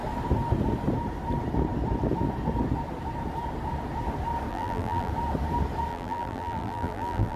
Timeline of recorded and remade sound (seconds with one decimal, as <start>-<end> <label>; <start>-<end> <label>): 0.0-4.5 recorded; 4.5-5.1 remade; 5.1-5.9 recorded; 5.9-7.4 remade